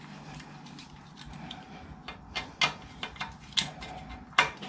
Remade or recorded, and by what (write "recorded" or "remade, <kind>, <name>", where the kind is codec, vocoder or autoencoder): recorded